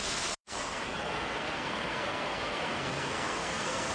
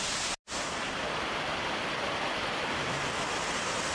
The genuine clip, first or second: second